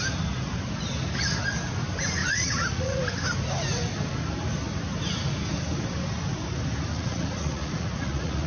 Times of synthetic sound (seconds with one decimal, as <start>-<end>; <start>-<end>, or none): 2.2-3.0; 6.9-8.5